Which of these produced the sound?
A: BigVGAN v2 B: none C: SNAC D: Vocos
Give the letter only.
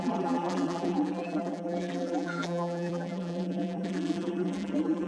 A